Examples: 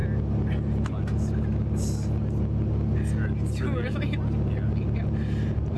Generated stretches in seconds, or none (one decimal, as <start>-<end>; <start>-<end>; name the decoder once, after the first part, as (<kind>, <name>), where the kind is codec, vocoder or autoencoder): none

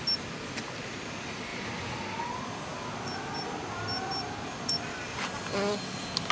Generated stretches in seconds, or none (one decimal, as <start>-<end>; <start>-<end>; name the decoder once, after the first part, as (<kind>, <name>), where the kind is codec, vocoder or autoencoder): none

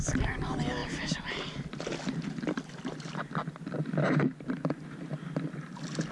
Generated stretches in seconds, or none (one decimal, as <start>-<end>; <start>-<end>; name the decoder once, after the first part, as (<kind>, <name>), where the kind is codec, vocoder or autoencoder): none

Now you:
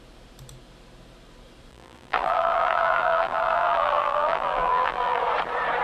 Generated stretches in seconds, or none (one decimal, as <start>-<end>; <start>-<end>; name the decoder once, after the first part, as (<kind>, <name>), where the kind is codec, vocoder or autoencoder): 1.7-5.2 (vocoder, BigVGAN v2)